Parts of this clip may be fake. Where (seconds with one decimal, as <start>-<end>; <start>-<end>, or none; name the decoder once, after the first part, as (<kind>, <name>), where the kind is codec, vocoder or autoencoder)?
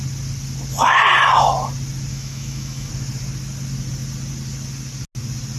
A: 2.1-2.9 (autoencoder, DAC-VAE)